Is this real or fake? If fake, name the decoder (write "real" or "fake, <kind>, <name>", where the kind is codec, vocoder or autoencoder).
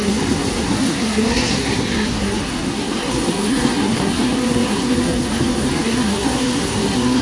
fake, codec, SNAC